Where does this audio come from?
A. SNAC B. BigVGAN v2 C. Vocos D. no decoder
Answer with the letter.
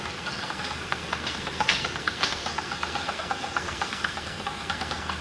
A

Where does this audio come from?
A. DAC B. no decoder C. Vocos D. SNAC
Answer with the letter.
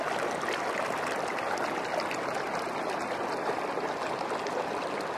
B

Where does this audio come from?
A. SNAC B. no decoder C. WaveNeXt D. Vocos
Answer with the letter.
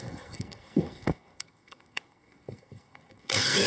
A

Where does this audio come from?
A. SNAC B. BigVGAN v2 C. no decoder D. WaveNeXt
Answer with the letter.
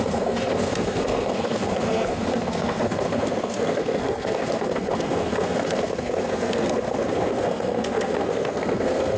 A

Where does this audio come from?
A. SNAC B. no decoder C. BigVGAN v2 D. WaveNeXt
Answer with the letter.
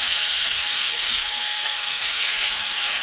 A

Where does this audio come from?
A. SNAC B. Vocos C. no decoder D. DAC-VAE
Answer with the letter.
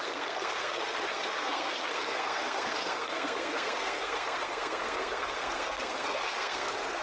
A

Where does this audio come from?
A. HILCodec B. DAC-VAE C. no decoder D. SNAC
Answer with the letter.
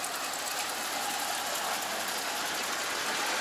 C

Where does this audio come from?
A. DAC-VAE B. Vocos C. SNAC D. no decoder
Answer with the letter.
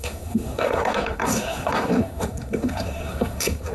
C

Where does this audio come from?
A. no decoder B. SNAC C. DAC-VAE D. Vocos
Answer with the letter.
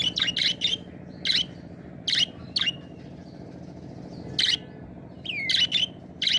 A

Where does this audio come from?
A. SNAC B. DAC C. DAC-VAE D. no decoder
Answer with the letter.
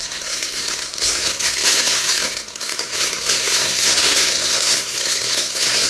A